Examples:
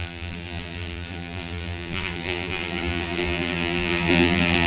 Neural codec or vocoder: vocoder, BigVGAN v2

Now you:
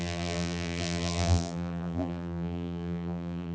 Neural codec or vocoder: vocoder, BigVGAN v2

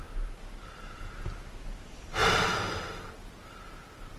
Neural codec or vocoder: none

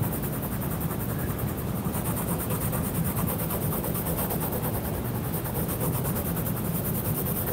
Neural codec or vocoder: none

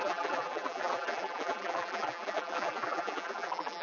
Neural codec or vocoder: vocoder, BigVGAN v2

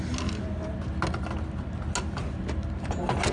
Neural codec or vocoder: none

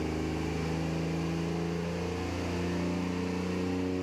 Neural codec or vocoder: none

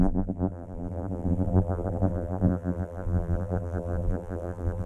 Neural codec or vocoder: vocoder, BigVGAN v2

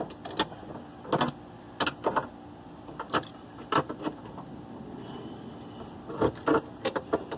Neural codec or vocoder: none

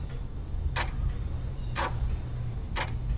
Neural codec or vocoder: none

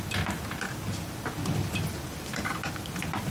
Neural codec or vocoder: none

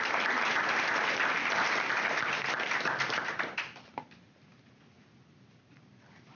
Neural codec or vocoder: vocoder, BigVGAN v2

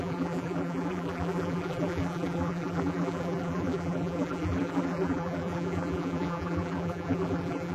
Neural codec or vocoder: vocoder, BigVGAN v2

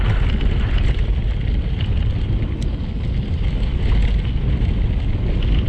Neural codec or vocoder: none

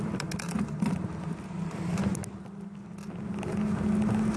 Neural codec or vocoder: none